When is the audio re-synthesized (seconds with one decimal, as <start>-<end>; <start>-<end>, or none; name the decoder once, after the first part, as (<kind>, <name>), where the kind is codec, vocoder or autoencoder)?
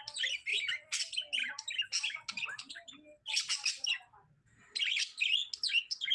none